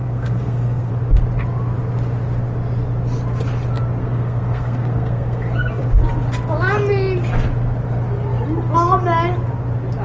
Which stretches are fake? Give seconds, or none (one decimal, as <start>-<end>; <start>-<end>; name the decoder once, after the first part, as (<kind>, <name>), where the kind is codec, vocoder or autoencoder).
0.0-0.9 (codec, SNAC); 4.0-5.8